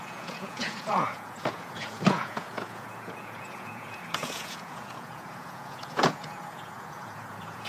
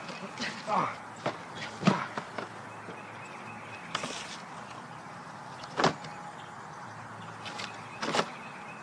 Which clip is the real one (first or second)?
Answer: second